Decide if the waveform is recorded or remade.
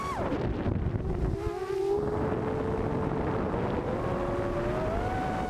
recorded